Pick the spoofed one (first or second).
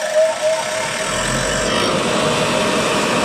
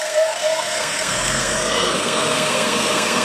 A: second